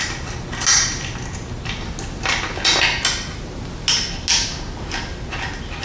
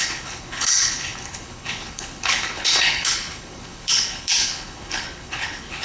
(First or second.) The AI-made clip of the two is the second